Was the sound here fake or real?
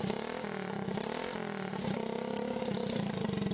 real